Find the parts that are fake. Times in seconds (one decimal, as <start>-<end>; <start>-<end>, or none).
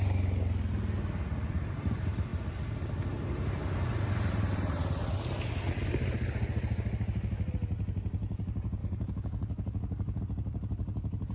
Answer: 8.8-10.2